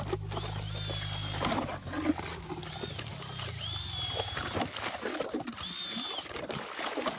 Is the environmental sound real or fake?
real